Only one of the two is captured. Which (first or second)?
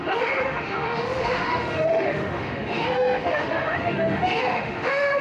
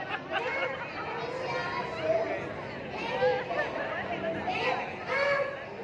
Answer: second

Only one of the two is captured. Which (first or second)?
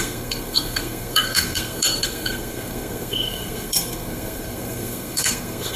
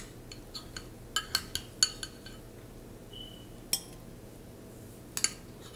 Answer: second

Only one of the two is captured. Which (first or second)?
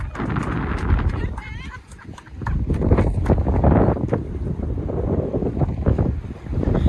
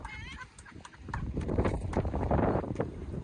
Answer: first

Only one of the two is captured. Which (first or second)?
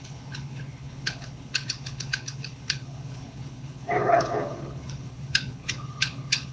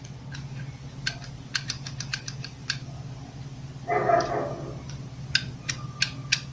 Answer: second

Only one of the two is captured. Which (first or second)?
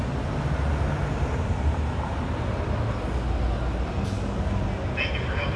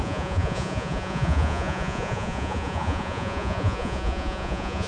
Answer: first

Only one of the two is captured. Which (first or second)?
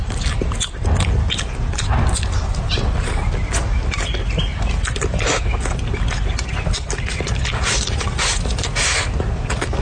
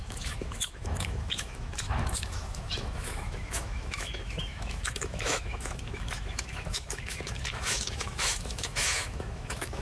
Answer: first